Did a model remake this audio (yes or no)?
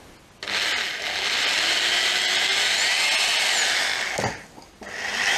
no